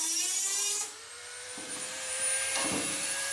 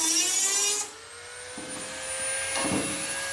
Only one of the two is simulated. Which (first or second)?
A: first